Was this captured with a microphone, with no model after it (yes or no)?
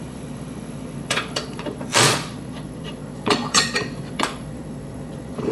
no